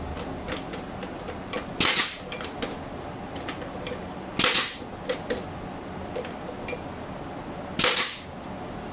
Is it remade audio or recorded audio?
recorded